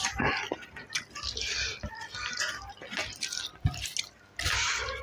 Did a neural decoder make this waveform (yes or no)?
no